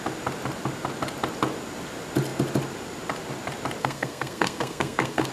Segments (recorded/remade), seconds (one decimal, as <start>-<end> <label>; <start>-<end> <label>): 0.0-3.8 recorded; 3.8-5.3 remade